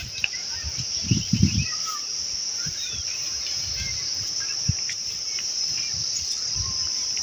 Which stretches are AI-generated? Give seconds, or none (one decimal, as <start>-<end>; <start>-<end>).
0.0-3.1; 4.4-7.2